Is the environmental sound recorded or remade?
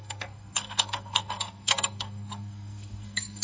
remade